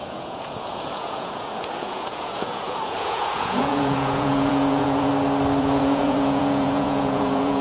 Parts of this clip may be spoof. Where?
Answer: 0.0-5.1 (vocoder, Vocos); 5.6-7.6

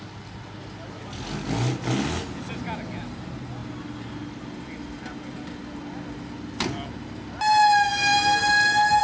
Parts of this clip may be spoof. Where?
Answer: none

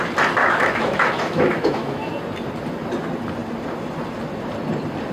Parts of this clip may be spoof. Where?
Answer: 0.4-2.1 (autoencoder, DAC-VAE)

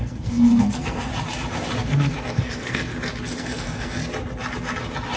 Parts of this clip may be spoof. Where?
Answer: 0.0-1.1 (codec, SNAC); 1.8-2.9; 3.4-4.0